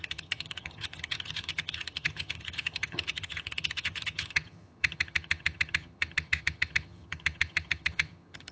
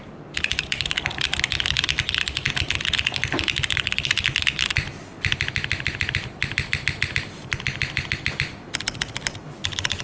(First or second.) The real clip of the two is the second